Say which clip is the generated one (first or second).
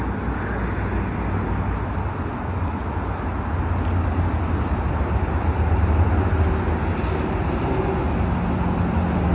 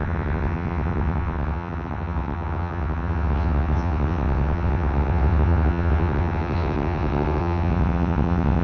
second